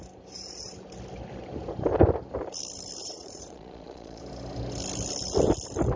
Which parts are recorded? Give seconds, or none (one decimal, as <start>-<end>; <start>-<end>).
0.0-3.0; 4.2-6.0